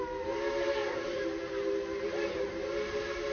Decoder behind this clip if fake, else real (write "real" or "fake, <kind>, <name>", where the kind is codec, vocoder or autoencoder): real